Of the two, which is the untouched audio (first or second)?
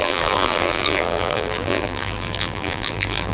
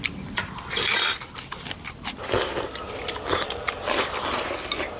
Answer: second